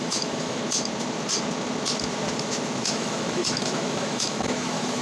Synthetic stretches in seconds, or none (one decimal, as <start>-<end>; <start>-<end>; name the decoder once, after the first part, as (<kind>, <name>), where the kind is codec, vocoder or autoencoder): 0.0-0.6 (autoencoder, DAC-VAE); 2.9-5.0